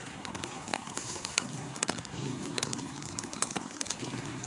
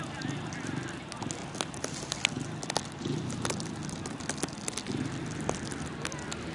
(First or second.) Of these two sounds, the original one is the second